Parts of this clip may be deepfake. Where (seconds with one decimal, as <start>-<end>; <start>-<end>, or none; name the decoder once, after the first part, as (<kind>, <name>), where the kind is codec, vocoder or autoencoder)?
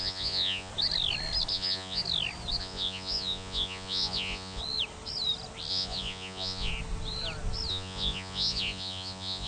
0.0-0.7 (vocoder, Vocos); 1.5-2.0; 2.6-4.6; 5.7-6.7; 7.7-9.5